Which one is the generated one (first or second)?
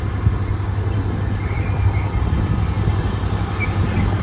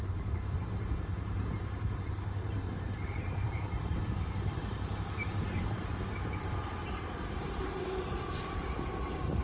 second